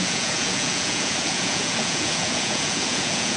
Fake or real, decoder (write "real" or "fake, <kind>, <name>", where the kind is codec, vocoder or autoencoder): fake, vocoder, Vocos